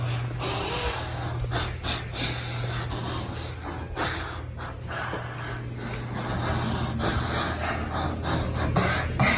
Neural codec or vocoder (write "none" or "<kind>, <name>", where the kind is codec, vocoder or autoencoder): none